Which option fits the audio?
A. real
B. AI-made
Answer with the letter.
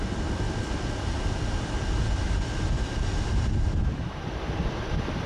B